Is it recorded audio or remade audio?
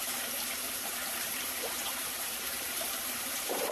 remade